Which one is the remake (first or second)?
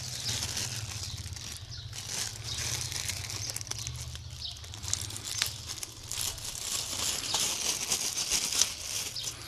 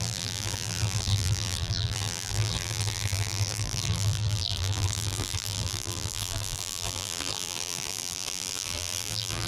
second